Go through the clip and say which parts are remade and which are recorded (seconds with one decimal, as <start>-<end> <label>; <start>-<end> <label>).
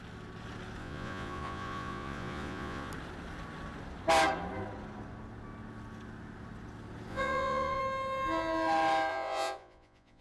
0.0-0.8 recorded; 0.8-2.9 remade; 2.9-7.1 recorded; 7.1-7.8 remade; 7.8-9.1 recorded; 9.1-10.2 remade